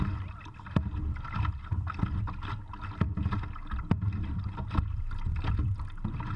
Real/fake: real